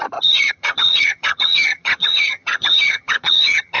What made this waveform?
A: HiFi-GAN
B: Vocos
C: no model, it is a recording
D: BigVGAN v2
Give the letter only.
A